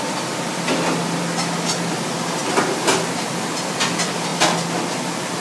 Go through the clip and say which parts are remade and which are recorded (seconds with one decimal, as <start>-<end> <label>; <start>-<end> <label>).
0.0-5.4 recorded